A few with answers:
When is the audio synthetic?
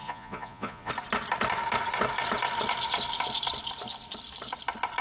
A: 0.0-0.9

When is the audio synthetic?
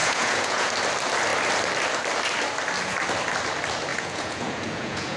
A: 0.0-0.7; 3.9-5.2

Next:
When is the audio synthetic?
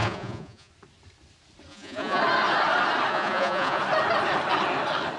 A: 0.0-0.7; 1.7-2.2; 3.1-3.8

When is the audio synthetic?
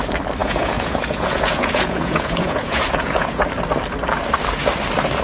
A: 0.4-3.4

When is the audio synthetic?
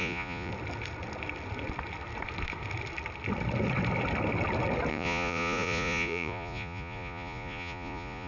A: 0.0-0.5; 4.9-8.3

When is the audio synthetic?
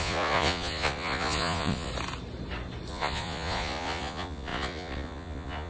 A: 0.0-1.9; 2.9-5.7